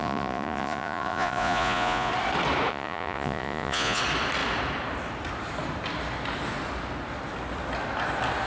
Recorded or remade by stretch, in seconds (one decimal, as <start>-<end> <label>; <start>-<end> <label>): 0.0-2.1 remade; 2.1-2.7 recorded; 2.7-4.0 remade; 4.0-8.5 recorded